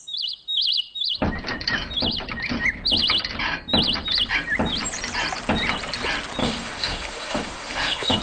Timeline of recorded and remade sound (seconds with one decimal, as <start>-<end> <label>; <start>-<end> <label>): 0.0-6.4 recorded; 6.4-8.2 remade